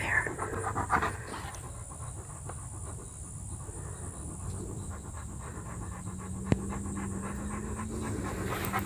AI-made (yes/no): no